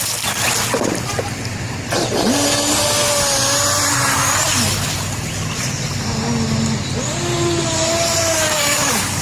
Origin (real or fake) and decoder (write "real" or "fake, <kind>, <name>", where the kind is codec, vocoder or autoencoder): real